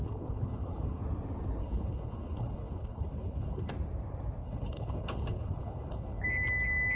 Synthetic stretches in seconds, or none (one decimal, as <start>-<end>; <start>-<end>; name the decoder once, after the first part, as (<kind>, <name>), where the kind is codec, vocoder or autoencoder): 0.0-1.0 (codec, HILCodec); 1.6-3.7; 4.4-6.2